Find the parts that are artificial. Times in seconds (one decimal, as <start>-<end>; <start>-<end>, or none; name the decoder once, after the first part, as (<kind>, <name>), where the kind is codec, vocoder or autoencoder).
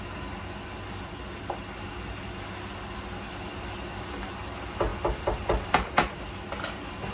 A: none